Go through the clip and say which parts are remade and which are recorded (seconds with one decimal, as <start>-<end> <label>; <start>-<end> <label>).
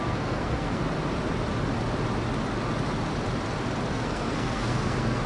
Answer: 0.0-0.8 remade; 0.8-3.9 recorded; 3.9-5.3 remade